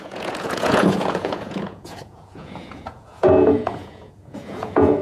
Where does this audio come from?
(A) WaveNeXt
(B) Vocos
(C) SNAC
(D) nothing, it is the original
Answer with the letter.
B